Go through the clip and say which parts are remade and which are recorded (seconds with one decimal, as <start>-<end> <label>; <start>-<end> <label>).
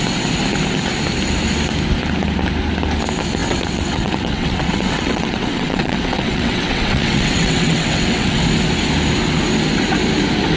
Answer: 0.0-3.4 recorded; 3.4-8.4 remade; 8.4-10.6 recorded